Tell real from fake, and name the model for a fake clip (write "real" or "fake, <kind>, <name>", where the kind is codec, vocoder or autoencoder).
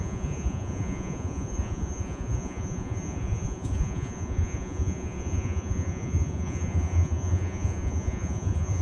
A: fake, vocoder, Vocos